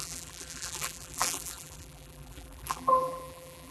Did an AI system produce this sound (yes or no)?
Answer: yes